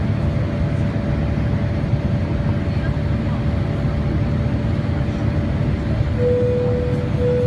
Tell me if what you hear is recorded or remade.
recorded